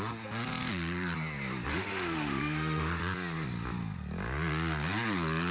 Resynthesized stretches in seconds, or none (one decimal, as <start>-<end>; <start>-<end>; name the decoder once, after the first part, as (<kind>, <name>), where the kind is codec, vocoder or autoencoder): 1.7-3.0 (autoencoder, DAC-VAE)